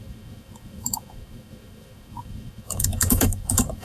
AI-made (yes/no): yes